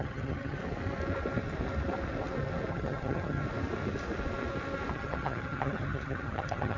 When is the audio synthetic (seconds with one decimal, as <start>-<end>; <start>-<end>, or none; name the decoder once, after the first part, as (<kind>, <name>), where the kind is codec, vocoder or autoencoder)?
0.0-0.6 (vocoder, HiFi-GAN); 2.7-3.4; 4.9-6.8

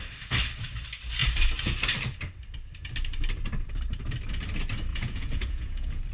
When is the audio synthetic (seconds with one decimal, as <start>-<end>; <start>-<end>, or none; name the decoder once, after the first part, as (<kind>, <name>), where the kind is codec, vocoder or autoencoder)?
4.9-6.1 (vocoder, Vocos)

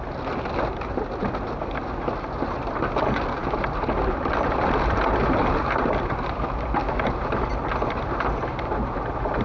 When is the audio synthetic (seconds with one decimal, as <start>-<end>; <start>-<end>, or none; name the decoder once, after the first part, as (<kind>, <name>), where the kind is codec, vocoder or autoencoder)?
3.4-4.8 (vocoder, BigVGAN v2)

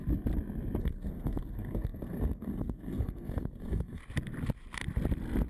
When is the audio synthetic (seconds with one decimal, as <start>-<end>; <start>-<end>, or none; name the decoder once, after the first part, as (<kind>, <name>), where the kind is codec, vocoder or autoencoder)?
0.8-4.0 (codec, SNAC)

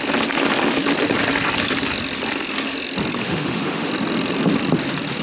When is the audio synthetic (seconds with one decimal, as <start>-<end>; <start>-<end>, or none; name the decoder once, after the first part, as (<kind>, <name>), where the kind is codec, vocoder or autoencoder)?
3.2-3.9 (autoencoder, DAC-VAE)

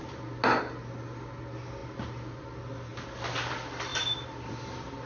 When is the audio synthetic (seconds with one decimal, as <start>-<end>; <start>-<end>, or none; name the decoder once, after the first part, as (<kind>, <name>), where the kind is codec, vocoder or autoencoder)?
none